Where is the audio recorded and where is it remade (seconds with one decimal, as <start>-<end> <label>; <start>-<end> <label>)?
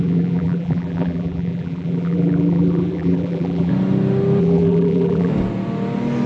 0.0-3.7 remade; 3.7-4.4 recorded; 4.4-5.3 remade; 5.3-6.3 recorded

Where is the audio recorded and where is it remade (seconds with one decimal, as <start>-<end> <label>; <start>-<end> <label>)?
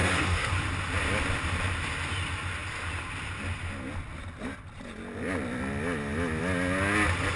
0.0-0.5 remade; 0.5-7.4 recorded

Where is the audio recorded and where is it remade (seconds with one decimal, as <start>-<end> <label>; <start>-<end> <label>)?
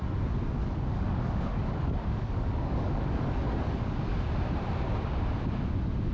0.0-0.6 recorded; 0.6-4.3 remade; 4.3-6.1 recorded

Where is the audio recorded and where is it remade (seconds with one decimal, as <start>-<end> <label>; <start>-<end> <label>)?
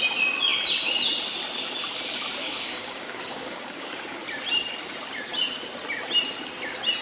0.0-2.4 recorded; 2.4-3.9 remade; 3.9-7.0 recorded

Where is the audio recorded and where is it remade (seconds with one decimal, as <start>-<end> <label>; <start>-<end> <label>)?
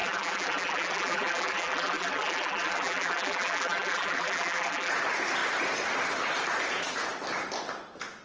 0.0-4.9 remade; 4.9-8.2 recorded